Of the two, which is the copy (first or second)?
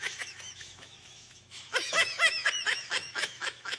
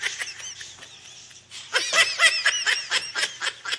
first